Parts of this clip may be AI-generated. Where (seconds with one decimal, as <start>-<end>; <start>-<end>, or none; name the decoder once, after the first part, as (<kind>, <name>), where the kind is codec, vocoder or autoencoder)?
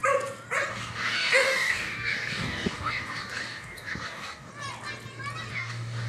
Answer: 0.7-4.5 (codec, DAC); 5.5-6.1